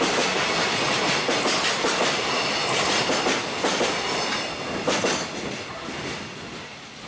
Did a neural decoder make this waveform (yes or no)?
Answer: no